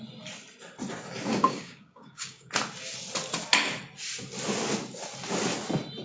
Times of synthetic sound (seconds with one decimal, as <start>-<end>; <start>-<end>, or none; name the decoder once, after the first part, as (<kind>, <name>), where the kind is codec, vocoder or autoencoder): 1.3-2.5 (codec, DAC)